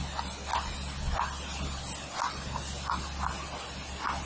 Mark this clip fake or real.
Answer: real